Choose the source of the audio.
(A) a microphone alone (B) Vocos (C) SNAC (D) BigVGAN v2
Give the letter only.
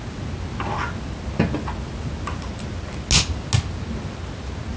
A